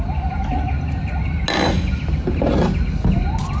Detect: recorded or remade recorded